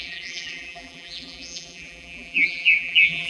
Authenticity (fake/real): fake